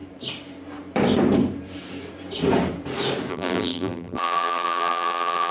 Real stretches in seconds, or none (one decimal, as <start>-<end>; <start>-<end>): 0.0-3.3